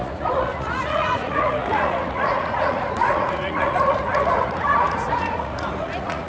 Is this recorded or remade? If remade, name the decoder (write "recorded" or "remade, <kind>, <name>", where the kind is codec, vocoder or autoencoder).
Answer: remade, vocoder, Vocos